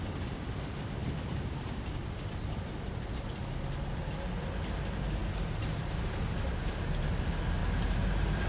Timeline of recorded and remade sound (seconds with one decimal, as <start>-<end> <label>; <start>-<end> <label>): 0.0-8.5 recorded